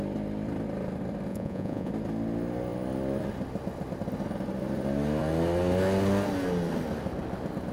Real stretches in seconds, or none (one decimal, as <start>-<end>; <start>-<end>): 0.0-1.3; 1.9-7.7